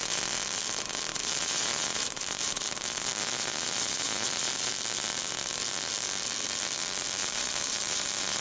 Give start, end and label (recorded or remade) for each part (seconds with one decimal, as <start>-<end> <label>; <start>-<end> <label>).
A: 0.0-1.1 recorded; 1.1-4.7 remade; 4.7-7.2 recorded; 7.2-8.4 remade